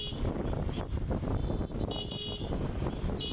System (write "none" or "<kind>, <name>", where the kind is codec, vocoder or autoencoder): none